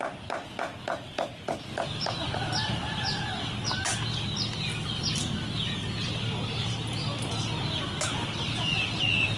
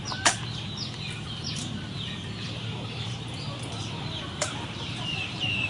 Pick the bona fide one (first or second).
first